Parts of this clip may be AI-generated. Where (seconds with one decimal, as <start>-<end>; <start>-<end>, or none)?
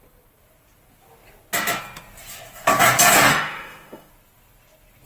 3.3-4.1